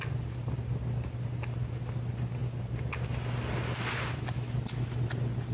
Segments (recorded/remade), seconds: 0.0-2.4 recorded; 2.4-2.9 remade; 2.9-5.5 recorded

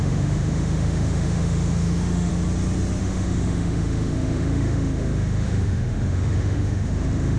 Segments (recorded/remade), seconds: 0.0-2.3 remade; 2.3-3.0 recorded; 3.0-7.4 remade

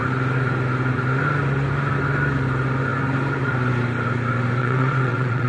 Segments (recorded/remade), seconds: 0.0-4.6 recorded; 4.6-5.5 remade

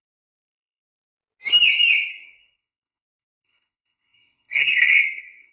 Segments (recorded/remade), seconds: 0.0-0.8 remade; 0.8-2.1 recorded; 2.1-5.5 remade